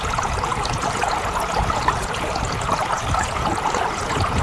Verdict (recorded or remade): remade